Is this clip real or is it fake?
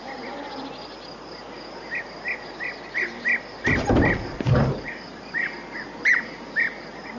real